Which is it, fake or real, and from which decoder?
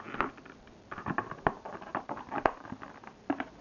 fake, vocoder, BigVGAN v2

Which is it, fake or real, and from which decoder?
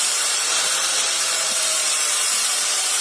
fake, vocoder, BigVGAN v2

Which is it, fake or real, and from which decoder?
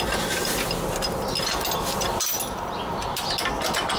real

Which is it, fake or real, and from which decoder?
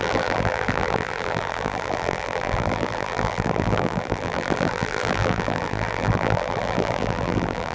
fake, vocoder, BigVGAN v2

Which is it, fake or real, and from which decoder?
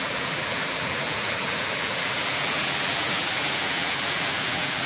fake, vocoder, BigVGAN v2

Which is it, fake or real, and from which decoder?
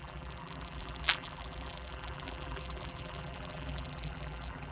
fake, vocoder, BigVGAN v2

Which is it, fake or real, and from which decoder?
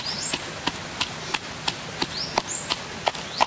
real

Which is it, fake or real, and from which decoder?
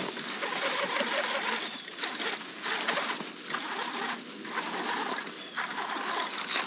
real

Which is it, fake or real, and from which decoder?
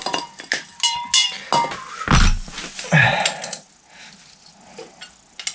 real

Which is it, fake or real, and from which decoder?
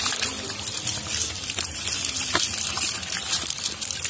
fake, vocoder, BigVGAN v2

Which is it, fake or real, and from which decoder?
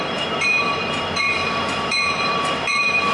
fake, vocoder, BigVGAN v2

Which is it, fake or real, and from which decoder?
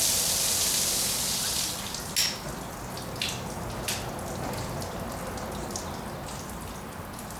real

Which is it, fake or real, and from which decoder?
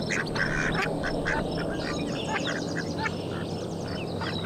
real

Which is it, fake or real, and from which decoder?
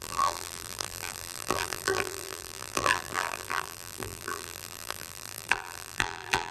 fake, vocoder, BigVGAN v2